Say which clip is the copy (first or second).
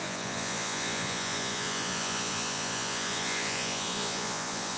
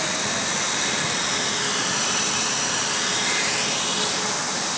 first